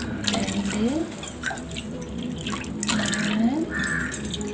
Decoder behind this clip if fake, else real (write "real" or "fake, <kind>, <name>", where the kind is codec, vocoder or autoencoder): real